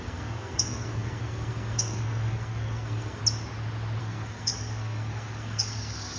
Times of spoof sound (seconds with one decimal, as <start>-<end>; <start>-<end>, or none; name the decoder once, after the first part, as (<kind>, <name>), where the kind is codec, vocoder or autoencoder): 0.0-3.2 (codec, SNAC); 4.0-6.2